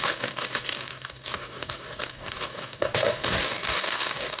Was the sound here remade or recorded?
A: remade